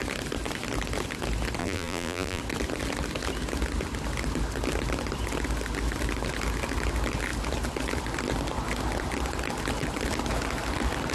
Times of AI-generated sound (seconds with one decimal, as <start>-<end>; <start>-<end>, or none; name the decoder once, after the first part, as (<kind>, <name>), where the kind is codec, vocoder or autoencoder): 1.6-2.4 (vocoder, BigVGAN v2)